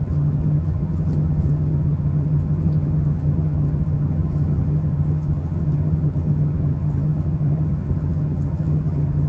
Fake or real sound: fake